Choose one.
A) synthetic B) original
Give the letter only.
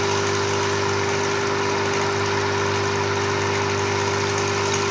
B